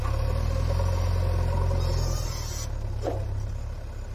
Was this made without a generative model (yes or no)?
yes